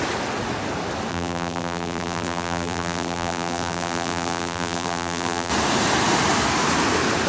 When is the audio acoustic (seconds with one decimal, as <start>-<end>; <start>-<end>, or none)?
0.0-1.1; 5.5-7.3

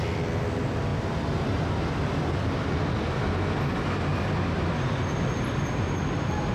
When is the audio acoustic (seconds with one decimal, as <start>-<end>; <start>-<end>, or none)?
0.0-6.5

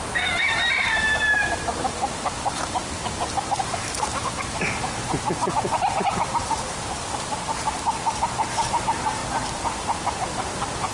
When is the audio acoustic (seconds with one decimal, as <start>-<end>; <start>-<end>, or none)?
9.2-10.2

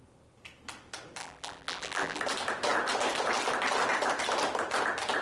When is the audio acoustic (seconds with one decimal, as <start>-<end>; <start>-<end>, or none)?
0.0-1.2; 2.2-5.2

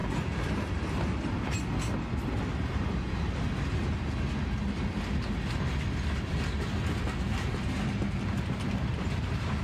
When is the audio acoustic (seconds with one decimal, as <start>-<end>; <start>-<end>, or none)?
0.0-9.6